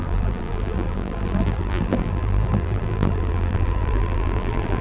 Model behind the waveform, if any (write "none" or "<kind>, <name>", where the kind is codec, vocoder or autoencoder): vocoder, BigVGAN v2